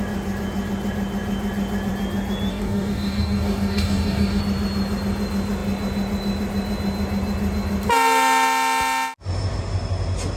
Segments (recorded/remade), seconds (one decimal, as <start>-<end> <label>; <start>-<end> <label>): 0.0-2.5 recorded; 2.5-4.4 remade; 4.4-10.4 recorded